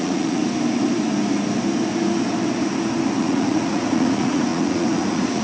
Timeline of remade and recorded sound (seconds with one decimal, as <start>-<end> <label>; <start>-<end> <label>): 0.0-0.4 remade; 0.4-3.2 recorded; 3.2-5.4 remade